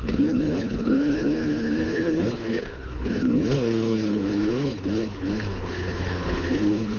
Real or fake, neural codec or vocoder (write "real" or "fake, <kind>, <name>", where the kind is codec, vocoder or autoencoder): fake, codec, HILCodec